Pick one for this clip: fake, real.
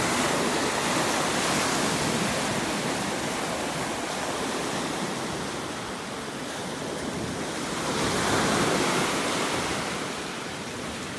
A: real